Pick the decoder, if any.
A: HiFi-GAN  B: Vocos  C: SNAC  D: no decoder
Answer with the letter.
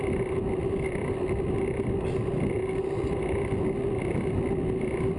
D